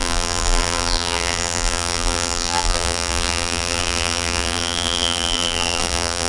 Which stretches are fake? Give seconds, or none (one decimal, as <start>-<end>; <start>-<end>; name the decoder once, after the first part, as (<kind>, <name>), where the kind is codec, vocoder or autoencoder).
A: 0.0-6.3 (vocoder, BigVGAN v2)